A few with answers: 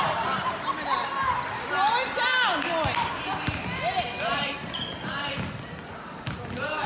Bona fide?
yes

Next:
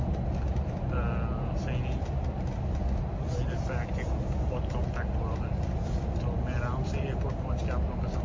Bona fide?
yes